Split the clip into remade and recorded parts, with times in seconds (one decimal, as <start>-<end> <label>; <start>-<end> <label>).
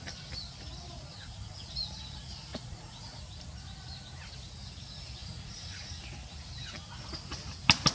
0.0-1.1 recorded; 1.1-1.7 remade; 1.7-2.5 recorded; 2.5-3.2 remade; 3.2-5.2 recorded; 5.2-5.9 remade; 5.9-7.9 recorded